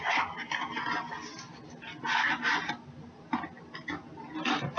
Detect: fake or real real